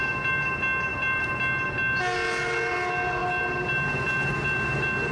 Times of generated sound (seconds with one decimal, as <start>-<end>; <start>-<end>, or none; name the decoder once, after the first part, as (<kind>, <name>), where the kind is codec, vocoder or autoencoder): none